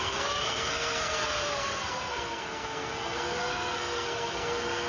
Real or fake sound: fake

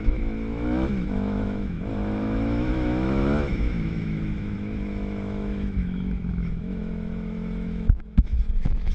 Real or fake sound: fake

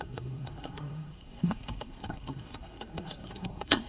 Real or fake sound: fake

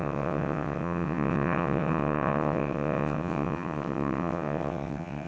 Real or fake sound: fake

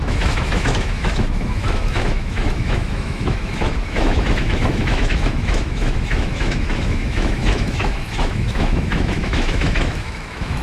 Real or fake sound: fake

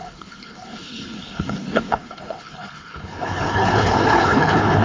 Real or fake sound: fake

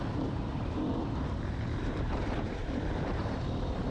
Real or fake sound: fake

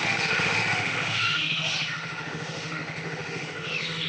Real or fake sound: fake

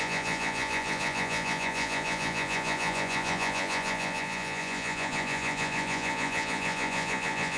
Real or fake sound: fake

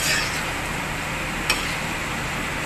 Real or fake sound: real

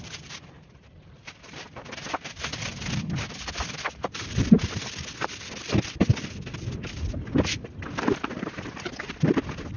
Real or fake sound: fake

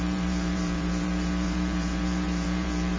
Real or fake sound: fake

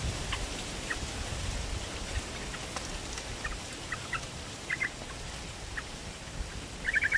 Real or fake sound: real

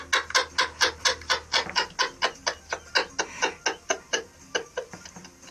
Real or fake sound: real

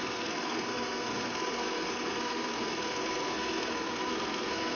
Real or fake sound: fake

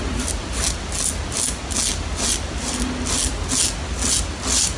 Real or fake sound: real